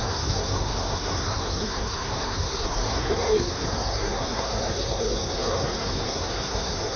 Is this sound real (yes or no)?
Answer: no